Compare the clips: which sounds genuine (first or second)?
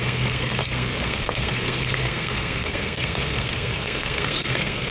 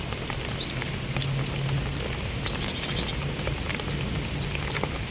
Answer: second